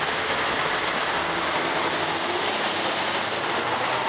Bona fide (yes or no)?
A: yes